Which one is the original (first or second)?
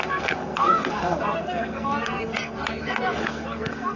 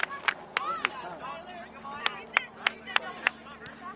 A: second